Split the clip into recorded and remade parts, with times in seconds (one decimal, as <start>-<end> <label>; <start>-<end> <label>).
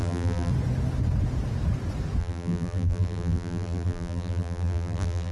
0.0-0.5 remade; 0.5-2.2 recorded; 2.2-5.3 remade